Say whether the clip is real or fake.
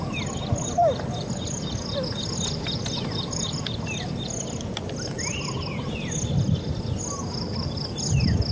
real